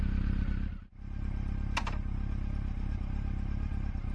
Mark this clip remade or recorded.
recorded